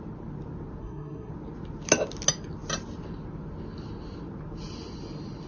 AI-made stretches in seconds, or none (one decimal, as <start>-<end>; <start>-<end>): 0.8-1.3